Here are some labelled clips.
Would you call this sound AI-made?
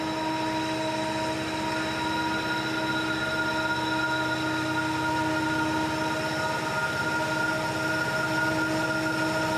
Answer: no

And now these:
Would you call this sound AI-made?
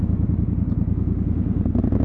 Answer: no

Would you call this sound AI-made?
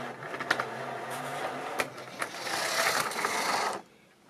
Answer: no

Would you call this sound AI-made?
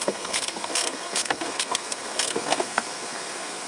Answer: yes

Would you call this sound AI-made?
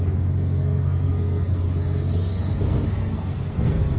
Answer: yes